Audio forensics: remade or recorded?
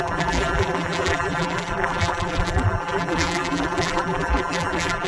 remade